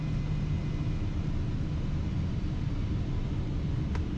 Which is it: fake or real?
real